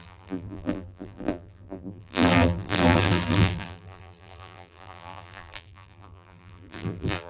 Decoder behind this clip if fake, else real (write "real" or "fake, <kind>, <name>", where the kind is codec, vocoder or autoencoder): fake, vocoder, BigVGAN v2